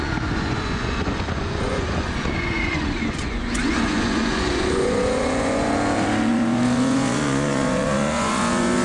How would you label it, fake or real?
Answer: fake